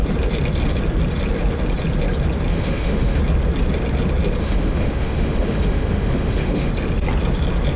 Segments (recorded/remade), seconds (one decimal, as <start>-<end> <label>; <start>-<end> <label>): 0.0-2.5 recorded; 2.5-3.2 remade; 3.2-4.4 recorded; 4.4-6.7 remade; 6.7-7.8 recorded